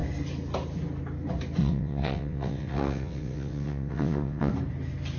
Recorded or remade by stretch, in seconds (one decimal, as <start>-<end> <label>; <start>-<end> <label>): 0.0-1.6 recorded; 1.6-4.5 remade; 4.5-5.2 recorded